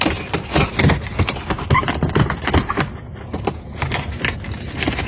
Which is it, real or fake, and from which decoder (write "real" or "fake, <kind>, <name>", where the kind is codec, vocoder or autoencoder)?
real